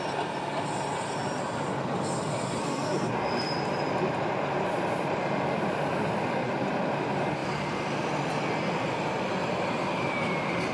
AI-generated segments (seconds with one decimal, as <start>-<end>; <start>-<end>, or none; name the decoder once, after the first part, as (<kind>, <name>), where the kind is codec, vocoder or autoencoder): 2.6-3.1 (codec, SNAC)